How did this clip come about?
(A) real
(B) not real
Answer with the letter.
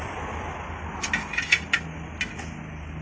A